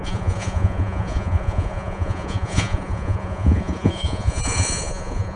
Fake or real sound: fake